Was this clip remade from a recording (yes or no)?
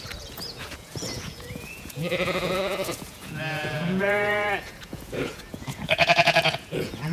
yes